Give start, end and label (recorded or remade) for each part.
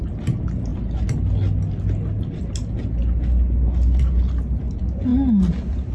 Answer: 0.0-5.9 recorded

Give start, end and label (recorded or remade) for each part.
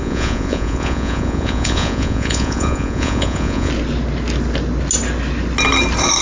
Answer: 0.0-3.7 remade; 3.7-6.2 recorded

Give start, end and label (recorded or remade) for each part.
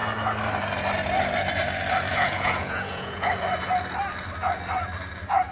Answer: 0.0-2.1 recorded; 2.1-3.3 remade; 3.3-5.5 recorded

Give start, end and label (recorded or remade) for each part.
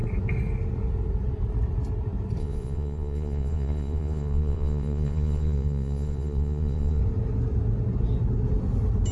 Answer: 0.0-2.4 recorded; 2.4-7.0 remade; 7.0-9.1 recorded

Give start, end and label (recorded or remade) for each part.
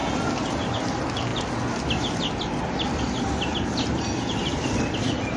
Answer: 0.0-5.4 recorded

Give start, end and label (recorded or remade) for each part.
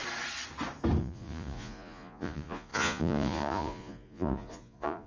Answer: 0.0-1.0 recorded; 1.0-5.1 remade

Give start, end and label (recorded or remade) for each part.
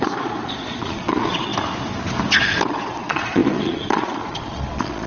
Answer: 0.0-1.5 remade; 1.5-2.7 recorded; 2.7-5.1 remade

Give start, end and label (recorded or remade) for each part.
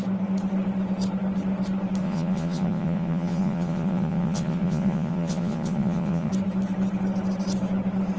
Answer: 0.0-2.0 recorded; 2.0-6.3 remade; 6.3-8.2 recorded